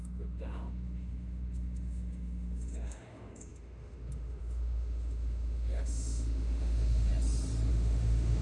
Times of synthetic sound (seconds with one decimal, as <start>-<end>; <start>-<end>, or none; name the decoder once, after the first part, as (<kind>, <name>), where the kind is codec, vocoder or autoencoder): 0.0-7.1 (autoencoder, DAC-VAE); 7.7-8.4